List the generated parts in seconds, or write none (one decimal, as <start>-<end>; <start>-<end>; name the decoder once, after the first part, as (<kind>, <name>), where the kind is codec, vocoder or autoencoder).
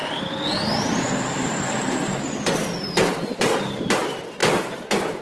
none